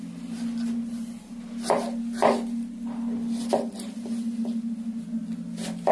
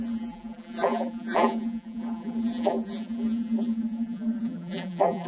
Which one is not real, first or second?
second